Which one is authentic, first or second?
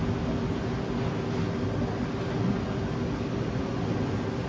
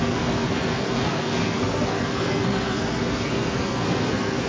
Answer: first